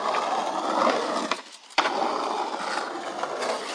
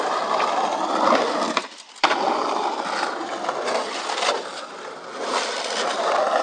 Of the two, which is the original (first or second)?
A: first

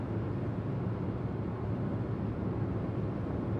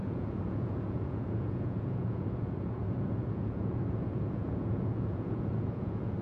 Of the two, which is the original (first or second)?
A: first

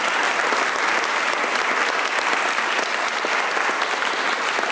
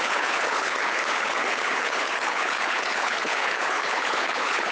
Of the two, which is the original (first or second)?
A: first